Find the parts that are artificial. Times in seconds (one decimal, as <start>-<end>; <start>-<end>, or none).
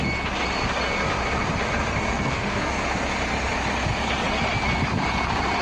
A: 2.1-2.7